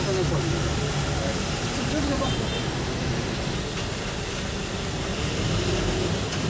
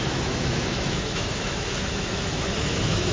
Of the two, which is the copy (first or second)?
second